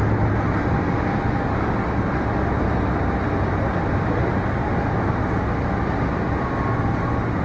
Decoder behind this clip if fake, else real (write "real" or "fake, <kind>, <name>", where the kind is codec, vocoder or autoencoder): real